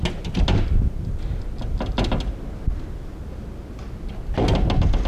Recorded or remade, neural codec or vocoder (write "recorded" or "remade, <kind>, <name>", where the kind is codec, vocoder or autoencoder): recorded